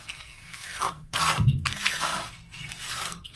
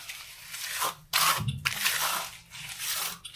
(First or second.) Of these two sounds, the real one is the second